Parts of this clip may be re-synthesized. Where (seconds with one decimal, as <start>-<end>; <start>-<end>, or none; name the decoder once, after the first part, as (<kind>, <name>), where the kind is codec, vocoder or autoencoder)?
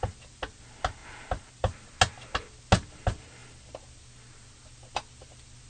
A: none